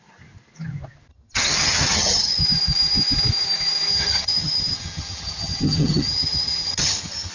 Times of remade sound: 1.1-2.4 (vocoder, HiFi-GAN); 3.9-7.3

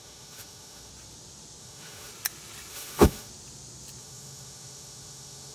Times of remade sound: 0.0-0.9 (autoencoder, DAC-VAE); 1.6-2.1; 2.7-3.3; 4.0-5.5

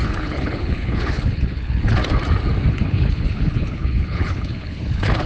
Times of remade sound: 0.0-2.0 (codec, HILCodec); 2.7-5.3

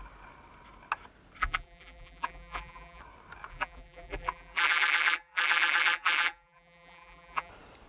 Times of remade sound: 1.4-3.0 (vocoder, BigVGAN v2); 3.5-7.5

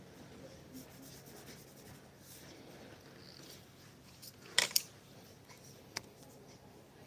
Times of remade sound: none

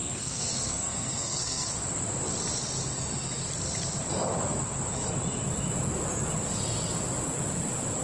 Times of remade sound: 0.0-1.7 (codec, SNAC)